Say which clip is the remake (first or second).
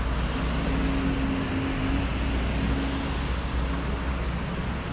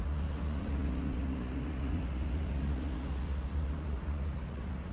second